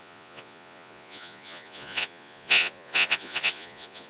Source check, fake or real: fake